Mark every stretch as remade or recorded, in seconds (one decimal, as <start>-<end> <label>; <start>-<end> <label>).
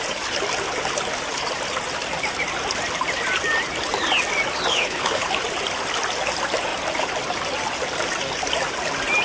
0.0-4.7 recorded; 4.7-5.3 remade; 5.3-9.2 recorded